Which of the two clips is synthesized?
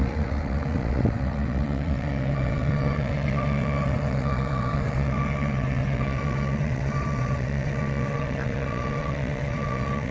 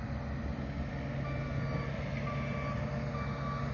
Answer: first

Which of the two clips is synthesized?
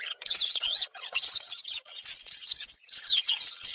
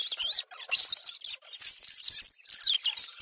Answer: first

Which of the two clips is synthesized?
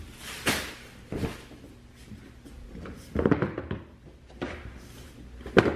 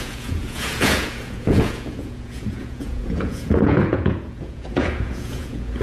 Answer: second